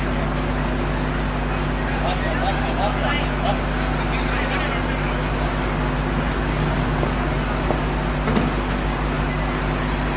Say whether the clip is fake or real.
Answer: real